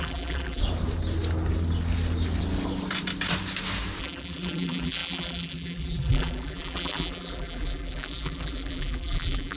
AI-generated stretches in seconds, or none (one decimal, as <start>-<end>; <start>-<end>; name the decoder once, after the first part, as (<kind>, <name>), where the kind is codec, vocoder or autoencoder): 0.0-0.6 (vocoder, BigVGAN v2); 4.0-9.6